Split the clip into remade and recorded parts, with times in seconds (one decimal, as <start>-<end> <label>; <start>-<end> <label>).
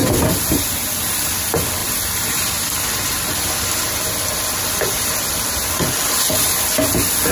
0.0-0.6 remade; 0.6-1.8 recorded; 1.8-6.2 remade; 6.2-7.3 recorded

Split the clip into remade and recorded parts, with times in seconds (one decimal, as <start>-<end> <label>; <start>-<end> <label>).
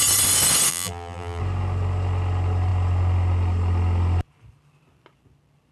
0.0-0.7 recorded; 0.7-1.4 remade; 1.4-5.7 recorded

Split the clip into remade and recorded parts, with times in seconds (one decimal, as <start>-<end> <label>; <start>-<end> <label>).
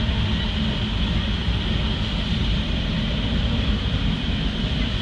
0.0-2.4 recorded; 2.4-2.9 remade; 2.9-5.0 recorded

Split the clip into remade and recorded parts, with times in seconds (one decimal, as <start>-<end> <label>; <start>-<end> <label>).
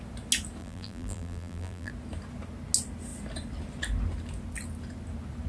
0.0-0.6 recorded; 0.6-1.9 remade; 1.9-5.5 recorded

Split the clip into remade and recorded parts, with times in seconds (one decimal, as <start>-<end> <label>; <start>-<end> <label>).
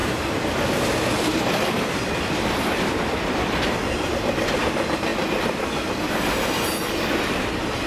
0.0-3.7 remade; 3.7-5.1 recorded; 5.1-6.1 remade; 6.1-7.9 recorded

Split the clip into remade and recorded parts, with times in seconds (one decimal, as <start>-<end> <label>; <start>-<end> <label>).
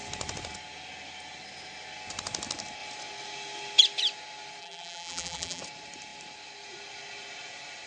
0.0-4.6 recorded; 4.6-5.6 remade; 5.6-7.9 recorded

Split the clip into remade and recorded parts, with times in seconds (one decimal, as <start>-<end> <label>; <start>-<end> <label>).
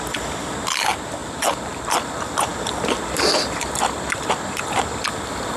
0.0-1.2 recorded; 1.2-1.7 remade; 1.7-2.5 recorded; 2.5-4.1 remade; 4.1-5.6 recorded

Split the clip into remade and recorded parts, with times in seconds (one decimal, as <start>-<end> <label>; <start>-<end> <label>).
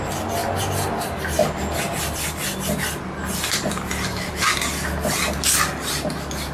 0.0-6.5 recorded